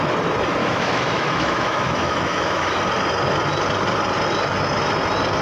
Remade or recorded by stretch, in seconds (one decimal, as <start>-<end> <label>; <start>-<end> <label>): 0.0-0.6 recorded; 0.6-2.8 remade; 2.8-5.4 recorded